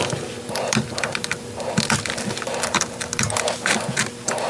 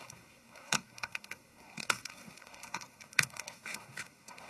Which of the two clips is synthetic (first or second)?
second